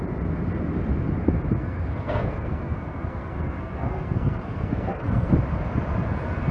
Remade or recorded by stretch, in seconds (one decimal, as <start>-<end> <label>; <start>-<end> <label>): 0.0-1.5 recorded; 1.5-5.3 remade; 5.3-6.5 recorded